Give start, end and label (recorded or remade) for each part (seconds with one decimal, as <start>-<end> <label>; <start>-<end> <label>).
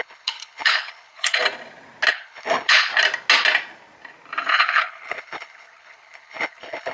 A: 0.0-1.4 remade; 1.4-2.1 recorded; 2.1-2.9 remade; 2.9-4.5 recorded; 4.5-6.9 remade